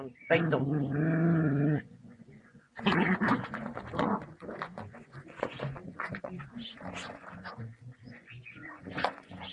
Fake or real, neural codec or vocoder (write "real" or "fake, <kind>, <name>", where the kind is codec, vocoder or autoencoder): fake, vocoder, Vocos